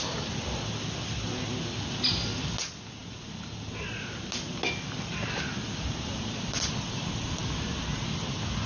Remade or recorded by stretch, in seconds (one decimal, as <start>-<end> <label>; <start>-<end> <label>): 0.0-8.7 recorded

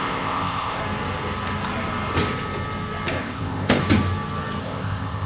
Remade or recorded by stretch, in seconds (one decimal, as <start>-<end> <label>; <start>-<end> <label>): 0.0-0.8 remade; 0.8-3.2 recorded; 3.2-3.8 remade; 3.8-4.6 recorded; 4.6-5.3 remade

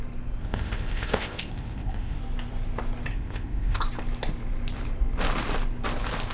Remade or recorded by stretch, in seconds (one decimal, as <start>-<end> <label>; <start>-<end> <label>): 0.0-0.4 recorded; 0.4-2.2 remade; 2.2-3.1 recorded; 3.1-3.8 remade; 3.8-6.3 recorded